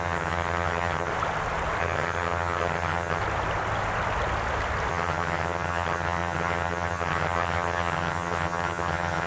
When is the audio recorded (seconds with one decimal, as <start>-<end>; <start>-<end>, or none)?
1.1-1.8; 3.2-4.9